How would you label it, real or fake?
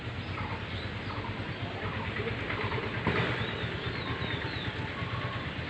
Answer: real